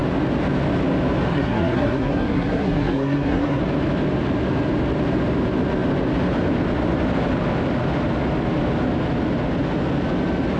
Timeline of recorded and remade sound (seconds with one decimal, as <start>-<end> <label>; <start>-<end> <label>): 0.0-1.3 recorded; 1.3-3.6 remade; 3.6-10.6 recorded